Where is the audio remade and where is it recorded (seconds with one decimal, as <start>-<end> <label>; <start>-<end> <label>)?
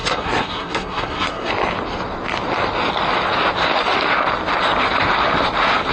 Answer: 0.0-1.5 remade; 1.5-5.9 recorded